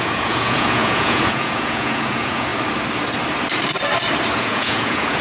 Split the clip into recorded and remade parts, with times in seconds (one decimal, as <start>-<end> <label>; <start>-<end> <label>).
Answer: 0.0-2.5 remade; 2.5-4.3 recorded; 4.3-5.2 remade